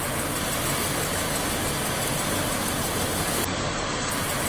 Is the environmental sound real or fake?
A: real